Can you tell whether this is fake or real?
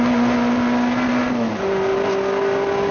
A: real